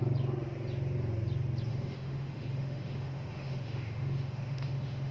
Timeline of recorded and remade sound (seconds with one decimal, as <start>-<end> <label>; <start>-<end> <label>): 0.0-1.7 recorded; 1.7-5.1 remade